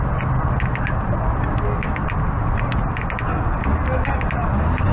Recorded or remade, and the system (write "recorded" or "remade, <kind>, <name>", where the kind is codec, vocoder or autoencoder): recorded